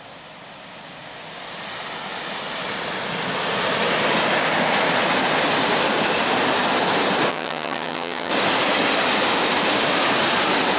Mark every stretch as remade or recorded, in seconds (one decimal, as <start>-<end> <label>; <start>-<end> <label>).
0.0-7.3 recorded; 7.3-8.3 remade; 8.3-10.8 recorded